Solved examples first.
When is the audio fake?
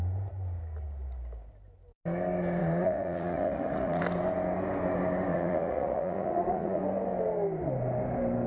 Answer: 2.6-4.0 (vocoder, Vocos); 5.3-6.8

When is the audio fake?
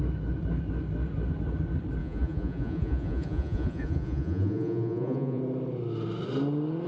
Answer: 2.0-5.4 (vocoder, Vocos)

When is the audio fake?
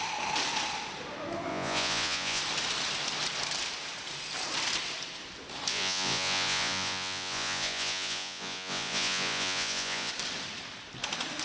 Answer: 1.5-2.4 (vocoder, Vocos); 5.7-10.1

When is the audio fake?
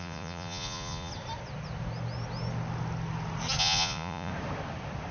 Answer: 0.0-1.1 (vocoder, Vocos); 3.6-4.3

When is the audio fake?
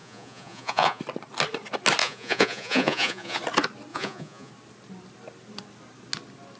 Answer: 0.0-1.0 (vocoder, Vocos); 2.0-3.4; 3.9-4.5